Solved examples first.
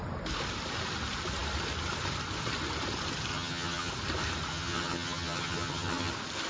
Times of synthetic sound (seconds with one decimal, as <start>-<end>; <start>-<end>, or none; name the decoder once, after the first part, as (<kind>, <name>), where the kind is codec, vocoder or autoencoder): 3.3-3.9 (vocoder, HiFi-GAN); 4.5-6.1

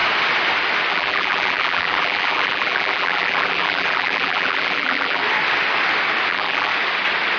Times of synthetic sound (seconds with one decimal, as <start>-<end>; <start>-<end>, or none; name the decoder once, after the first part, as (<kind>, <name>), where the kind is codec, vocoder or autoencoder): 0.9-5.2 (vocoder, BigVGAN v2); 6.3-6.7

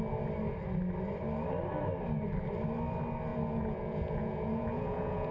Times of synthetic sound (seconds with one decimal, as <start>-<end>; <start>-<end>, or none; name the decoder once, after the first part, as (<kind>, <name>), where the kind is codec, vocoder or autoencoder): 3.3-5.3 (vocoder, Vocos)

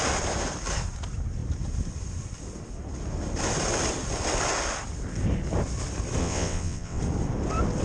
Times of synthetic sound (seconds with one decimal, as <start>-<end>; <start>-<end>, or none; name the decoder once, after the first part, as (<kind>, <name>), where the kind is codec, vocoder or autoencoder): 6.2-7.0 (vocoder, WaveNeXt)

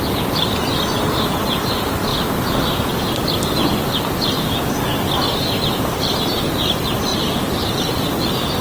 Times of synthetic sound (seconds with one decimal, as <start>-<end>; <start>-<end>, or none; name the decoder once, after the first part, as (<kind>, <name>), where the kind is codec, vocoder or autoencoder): 7.1-7.9 (vocoder, BigVGAN v2)